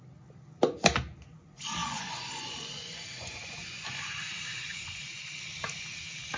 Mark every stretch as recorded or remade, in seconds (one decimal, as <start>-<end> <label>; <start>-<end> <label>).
0.0-1.8 recorded; 1.8-5.3 remade; 5.3-6.4 recorded